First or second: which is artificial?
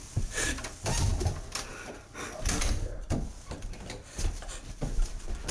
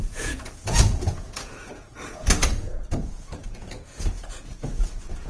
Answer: second